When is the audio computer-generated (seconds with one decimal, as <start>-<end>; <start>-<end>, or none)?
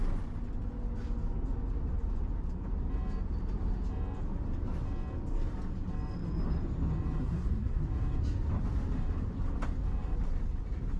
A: 7.2-7.8